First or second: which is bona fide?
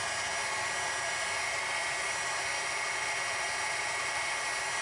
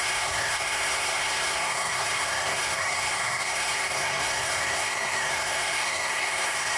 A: first